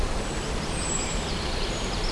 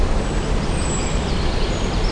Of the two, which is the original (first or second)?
second